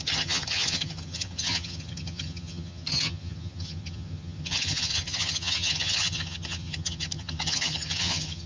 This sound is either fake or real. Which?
fake